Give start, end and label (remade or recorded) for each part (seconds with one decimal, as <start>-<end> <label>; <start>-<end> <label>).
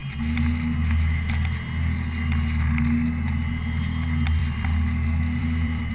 0.0-4.4 recorded; 4.4-5.9 remade